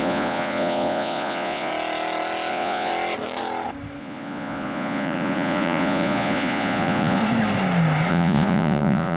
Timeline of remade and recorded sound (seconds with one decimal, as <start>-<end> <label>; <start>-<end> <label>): 0.0-1.7 remade; 1.7-2.5 recorded; 2.5-2.9 remade; 2.9-4.0 recorded; 4.0-7.2 remade; 7.2-8.1 recorded; 8.1-9.2 remade